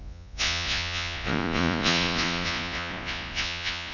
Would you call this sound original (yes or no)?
no